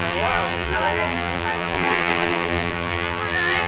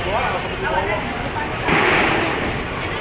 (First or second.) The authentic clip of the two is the second